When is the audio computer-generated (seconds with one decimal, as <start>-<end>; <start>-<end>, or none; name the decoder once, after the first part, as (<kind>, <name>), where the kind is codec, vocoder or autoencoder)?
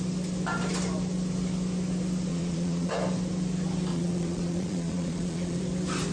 2.3-2.9 (vocoder, Vocos); 3.9-5.6